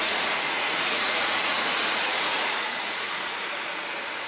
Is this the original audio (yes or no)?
no